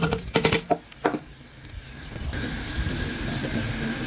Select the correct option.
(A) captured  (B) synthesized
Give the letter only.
B